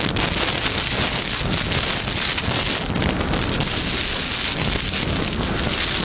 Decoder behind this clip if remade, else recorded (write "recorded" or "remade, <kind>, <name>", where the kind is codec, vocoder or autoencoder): recorded